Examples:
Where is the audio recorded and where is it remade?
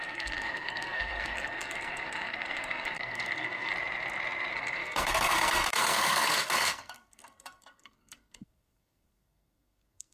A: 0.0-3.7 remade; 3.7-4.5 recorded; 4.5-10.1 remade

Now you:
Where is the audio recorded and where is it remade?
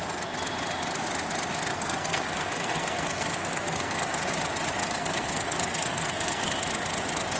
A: 0.0-1.7 recorded; 1.7-4.2 remade; 4.2-4.8 recorded; 4.8-6.5 remade; 6.5-7.4 recorded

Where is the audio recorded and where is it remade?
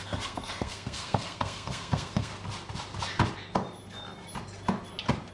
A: 0.0-2.3 remade; 2.3-5.3 recorded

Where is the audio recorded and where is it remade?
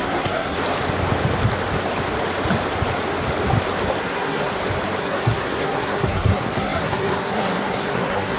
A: 0.0-0.6 remade; 0.6-4.0 recorded; 4.0-4.5 remade; 4.5-5.0 recorded; 5.0-8.4 remade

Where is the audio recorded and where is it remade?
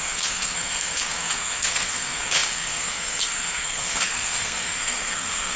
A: 0.0-5.6 remade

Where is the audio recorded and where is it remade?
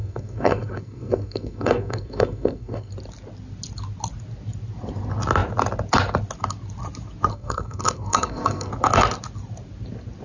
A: 0.0-2.9 remade; 2.9-7.3 recorded; 7.3-8.7 remade; 8.7-10.2 recorded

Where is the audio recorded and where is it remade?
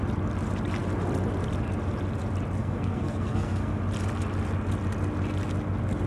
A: 0.0-2.6 recorded; 2.6-3.8 remade; 3.8-6.1 recorded